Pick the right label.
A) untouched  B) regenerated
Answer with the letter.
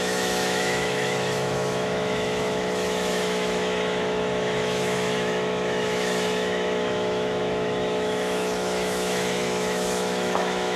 B